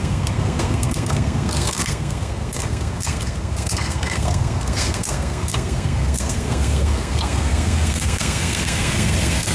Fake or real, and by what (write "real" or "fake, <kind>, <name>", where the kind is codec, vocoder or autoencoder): fake, codec, SNAC